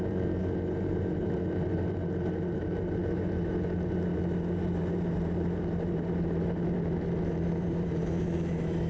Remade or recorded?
remade